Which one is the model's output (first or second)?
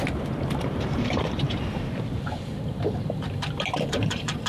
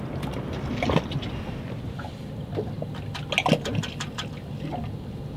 first